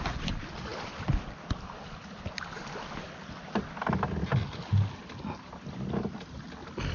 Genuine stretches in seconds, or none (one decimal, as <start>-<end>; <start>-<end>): 0.0-6.9

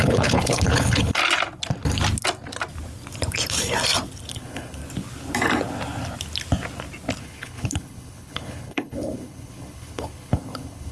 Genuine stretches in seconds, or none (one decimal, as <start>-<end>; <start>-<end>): 1.2-4.3; 4.8-7.2

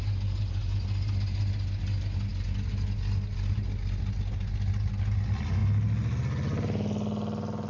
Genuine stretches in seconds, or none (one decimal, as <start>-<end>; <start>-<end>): 0.0-7.7

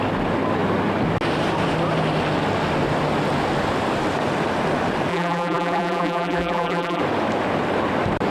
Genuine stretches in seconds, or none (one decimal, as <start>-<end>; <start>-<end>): 0.0-5.1; 7.0-8.3

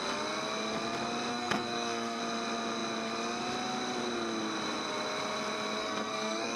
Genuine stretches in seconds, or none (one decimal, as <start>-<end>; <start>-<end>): 0.0-1.3; 2.2-5.8

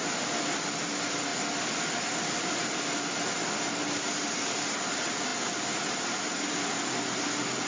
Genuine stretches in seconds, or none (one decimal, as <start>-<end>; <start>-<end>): 0.0-7.7